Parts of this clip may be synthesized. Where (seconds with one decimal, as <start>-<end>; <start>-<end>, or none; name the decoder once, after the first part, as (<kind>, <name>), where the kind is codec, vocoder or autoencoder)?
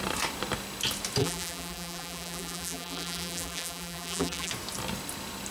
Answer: 1.2-4.5 (vocoder, BigVGAN v2)